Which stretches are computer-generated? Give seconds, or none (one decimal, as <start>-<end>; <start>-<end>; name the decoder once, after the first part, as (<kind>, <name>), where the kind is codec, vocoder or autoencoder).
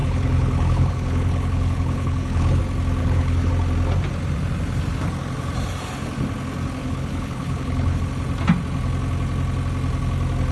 0.0-2.6 (codec, HILCodec); 3.0-3.5; 6.8-8.0